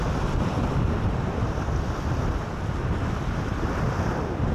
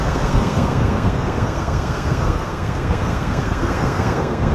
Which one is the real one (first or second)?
first